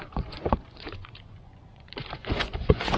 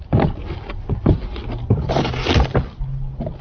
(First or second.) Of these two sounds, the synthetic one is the first